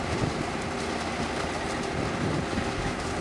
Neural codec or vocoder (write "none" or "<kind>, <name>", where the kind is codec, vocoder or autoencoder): none